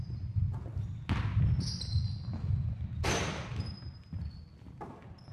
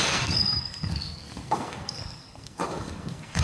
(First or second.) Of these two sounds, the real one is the first